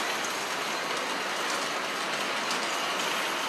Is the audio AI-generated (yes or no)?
no